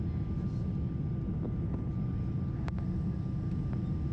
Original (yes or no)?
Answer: yes